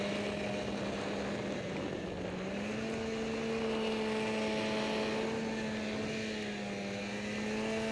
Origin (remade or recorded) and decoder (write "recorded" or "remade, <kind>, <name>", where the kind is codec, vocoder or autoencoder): recorded